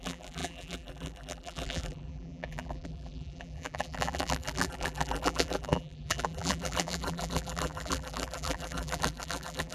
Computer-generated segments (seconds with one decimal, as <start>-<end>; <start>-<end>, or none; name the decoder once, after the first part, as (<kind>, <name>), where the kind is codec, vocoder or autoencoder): 0.0-9.7 (vocoder, BigVGAN v2)